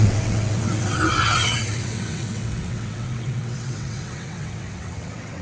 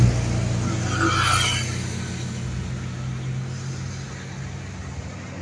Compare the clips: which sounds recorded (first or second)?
second